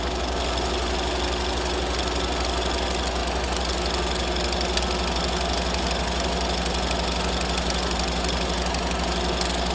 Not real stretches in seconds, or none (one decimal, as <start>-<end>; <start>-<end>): none